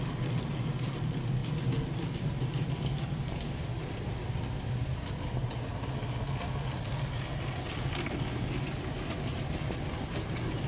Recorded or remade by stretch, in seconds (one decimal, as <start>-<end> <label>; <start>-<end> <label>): 0.0-10.7 recorded